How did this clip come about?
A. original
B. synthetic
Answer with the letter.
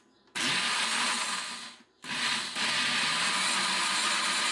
A